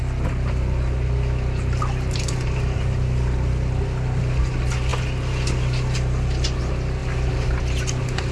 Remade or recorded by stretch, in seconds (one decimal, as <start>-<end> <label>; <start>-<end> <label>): 0.0-8.3 recorded